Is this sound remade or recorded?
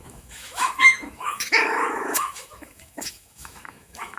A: remade